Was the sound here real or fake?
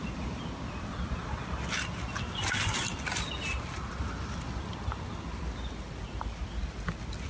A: real